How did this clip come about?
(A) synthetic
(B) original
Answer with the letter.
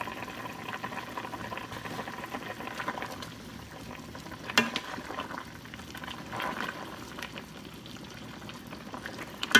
B